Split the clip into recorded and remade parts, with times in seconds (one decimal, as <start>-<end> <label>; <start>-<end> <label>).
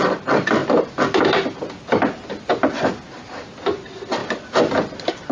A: 0.0-5.3 recorded